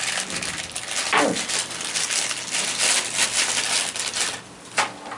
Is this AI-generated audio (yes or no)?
no